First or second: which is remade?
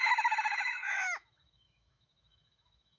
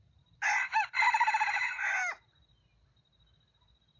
first